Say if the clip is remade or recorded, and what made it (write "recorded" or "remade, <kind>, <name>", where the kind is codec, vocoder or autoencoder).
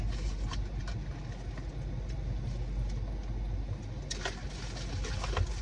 recorded